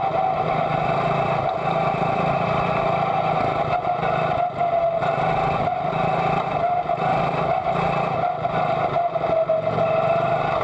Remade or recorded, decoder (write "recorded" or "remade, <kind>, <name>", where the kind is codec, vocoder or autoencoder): recorded